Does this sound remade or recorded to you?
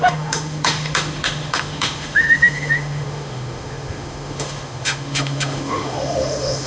remade